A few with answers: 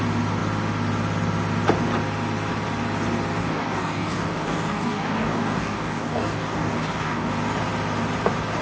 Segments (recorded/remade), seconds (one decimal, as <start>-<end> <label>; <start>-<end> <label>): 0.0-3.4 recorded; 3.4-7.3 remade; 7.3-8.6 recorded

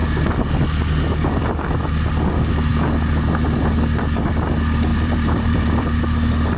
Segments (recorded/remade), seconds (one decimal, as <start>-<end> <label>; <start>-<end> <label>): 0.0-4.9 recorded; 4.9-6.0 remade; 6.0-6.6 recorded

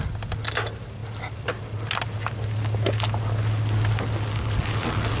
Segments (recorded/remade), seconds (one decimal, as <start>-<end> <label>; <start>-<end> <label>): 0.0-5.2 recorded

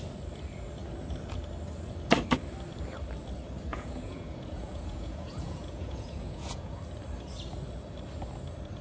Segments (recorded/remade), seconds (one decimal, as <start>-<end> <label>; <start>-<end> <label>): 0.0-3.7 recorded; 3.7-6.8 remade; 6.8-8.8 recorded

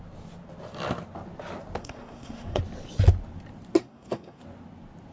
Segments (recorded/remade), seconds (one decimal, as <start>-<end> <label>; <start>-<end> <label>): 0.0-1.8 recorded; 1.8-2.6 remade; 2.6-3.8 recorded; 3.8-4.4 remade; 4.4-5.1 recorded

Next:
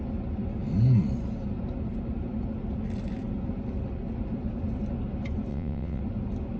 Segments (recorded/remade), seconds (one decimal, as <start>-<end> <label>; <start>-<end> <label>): 0.0-5.5 recorded; 5.5-6.0 remade; 6.0-6.6 recorded

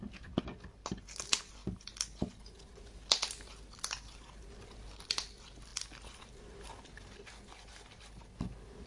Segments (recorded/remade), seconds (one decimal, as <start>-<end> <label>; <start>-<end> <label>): 0.0-8.9 recorded